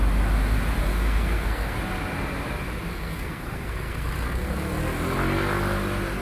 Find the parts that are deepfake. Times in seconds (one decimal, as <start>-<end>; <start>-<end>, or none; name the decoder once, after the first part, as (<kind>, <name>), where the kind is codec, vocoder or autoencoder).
0.9-1.8 (codec, SNAC); 2.9-4.7